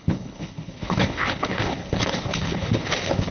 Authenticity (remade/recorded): remade